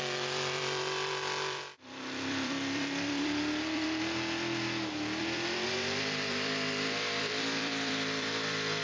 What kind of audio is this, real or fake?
fake